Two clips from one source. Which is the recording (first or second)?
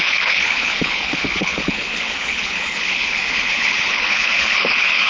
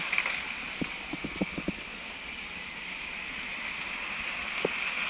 second